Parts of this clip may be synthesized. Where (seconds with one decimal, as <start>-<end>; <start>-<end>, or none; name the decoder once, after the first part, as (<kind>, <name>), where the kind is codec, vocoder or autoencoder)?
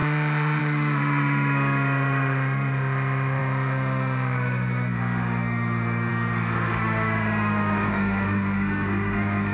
0.0-9.5 (autoencoder, DAC-VAE)